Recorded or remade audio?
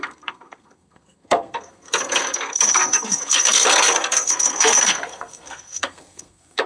remade